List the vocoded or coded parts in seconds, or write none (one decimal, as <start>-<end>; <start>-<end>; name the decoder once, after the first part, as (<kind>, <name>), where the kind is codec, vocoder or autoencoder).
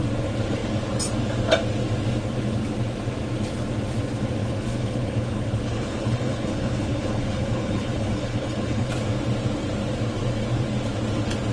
4.4-8.9 (codec, HILCodec)